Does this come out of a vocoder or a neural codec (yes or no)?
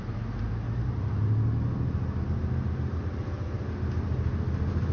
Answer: no